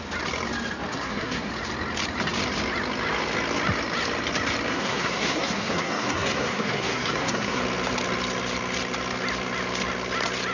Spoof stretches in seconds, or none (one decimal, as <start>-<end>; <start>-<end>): 0.9-1.5; 4.7-7.6